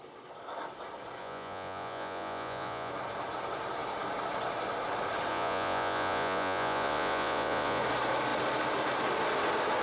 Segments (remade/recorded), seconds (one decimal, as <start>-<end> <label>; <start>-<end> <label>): 0.0-1.2 recorded; 1.2-2.9 remade; 2.9-5.3 recorded; 5.3-7.8 remade; 7.8-9.8 recorded